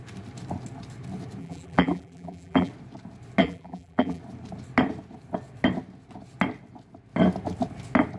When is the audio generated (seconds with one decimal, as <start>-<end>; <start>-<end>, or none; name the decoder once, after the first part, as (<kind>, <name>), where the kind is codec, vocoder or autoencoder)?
1.4-2.7 (vocoder, BigVGAN v2); 3.4-4.2